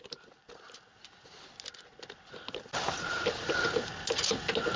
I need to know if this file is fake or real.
real